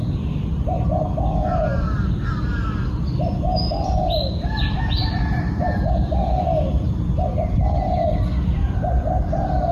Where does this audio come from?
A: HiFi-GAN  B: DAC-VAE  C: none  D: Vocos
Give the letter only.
C